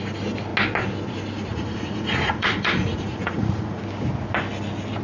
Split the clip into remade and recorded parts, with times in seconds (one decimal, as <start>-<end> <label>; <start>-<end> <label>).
0.0-1.5 recorded; 1.5-3.8 remade; 3.8-5.0 recorded